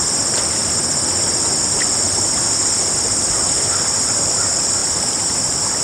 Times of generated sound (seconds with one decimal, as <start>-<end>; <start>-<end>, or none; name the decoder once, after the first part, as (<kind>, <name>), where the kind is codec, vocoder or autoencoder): 4.8-5.8 (vocoder, BigVGAN v2)